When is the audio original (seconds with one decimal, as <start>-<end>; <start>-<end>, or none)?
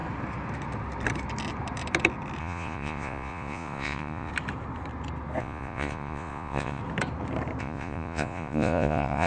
0.0-2.4; 4.3-5.4; 6.8-7.6